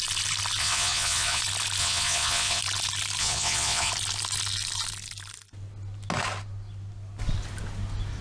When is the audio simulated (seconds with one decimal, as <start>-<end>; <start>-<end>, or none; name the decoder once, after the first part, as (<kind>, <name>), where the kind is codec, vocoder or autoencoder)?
0.6-1.4 (vocoder, WaveNeXt); 1.8-2.6; 3.2-3.9